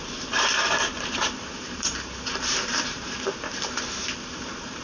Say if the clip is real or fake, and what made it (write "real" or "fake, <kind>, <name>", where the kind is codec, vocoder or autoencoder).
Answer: fake, vocoder, BigVGAN v2